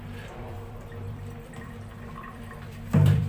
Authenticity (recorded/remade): remade